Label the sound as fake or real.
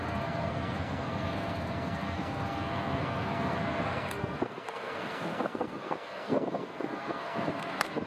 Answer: fake